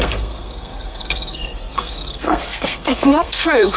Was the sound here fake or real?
fake